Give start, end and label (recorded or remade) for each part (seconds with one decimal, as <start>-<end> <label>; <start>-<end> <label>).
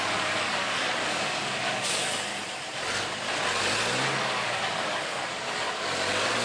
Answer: 0.0-2.0 remade; 2.0-4.2 recorded; 4.2-6.4 remade